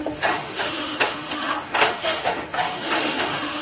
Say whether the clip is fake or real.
fake